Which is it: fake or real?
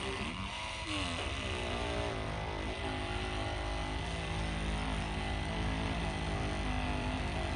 real